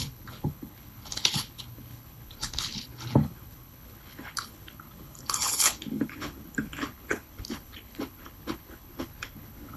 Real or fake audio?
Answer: fake